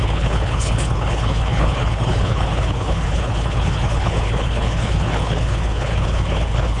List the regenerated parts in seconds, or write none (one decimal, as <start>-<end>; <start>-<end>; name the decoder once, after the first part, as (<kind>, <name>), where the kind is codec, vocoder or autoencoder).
0.0-6.8 (codec, HILCodec)